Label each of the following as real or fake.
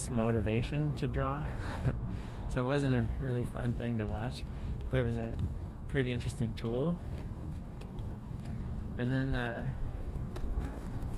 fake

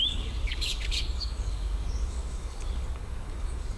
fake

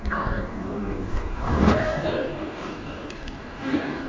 fake